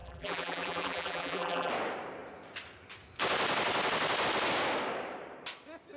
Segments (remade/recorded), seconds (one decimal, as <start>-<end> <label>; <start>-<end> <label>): 0.0-1.7 remade; 1.7-6.0 recorded